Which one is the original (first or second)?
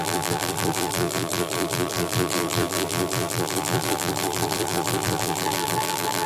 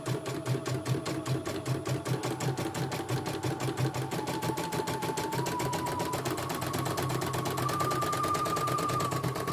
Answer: second